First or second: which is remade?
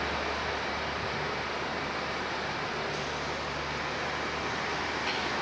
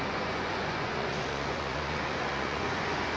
second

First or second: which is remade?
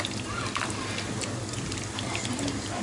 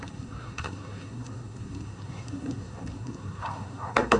second